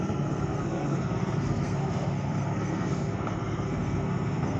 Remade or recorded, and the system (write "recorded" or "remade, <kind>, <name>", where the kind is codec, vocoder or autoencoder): remade, codec, SNAC